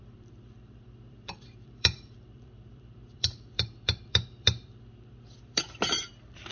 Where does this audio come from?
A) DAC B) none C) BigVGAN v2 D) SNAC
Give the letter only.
C